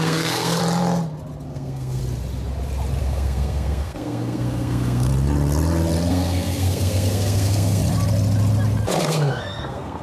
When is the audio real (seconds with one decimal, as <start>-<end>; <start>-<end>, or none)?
0.6-1.5; 2.0-3.0; 5.1-6.1; 7.8-9.0